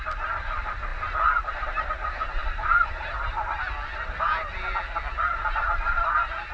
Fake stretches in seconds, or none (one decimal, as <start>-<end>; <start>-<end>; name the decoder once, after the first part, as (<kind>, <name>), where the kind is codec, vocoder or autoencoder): none

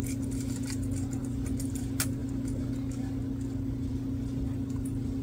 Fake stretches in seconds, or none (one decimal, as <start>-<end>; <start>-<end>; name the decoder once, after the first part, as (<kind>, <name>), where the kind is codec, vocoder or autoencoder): none

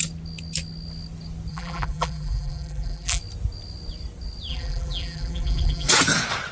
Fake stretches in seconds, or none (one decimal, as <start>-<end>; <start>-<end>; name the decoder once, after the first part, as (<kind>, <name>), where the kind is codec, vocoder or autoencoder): 1.5-3.2 (vocoder, BigVGAN v2); 4.5-5.9

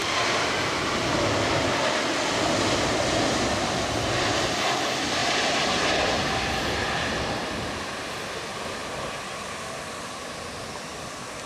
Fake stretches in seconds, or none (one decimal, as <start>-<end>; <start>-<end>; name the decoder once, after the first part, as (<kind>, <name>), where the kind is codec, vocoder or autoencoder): 5.2-7.1 (vocoder, BigVGAN v2)

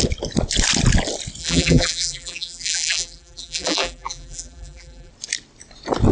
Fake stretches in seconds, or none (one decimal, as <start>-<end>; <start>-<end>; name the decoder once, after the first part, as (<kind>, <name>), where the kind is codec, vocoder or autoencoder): 1.4-5.1 (vocoder, BigVGAN v2)